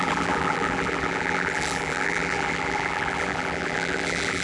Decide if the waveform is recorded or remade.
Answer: remade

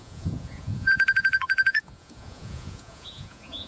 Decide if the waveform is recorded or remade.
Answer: remade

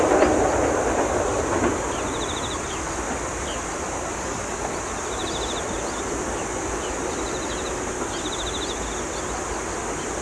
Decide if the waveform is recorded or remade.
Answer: recorded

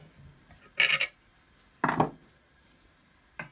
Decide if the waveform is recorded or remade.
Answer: recorded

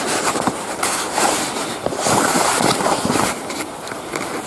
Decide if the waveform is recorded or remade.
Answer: remade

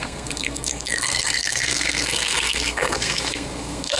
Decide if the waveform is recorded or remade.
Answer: remade